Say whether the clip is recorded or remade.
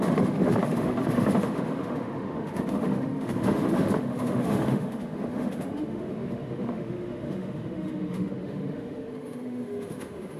remade